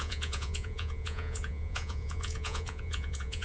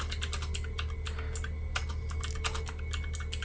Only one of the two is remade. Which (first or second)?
first